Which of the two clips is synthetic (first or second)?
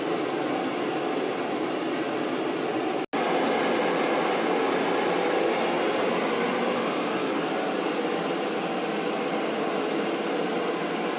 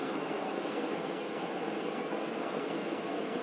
second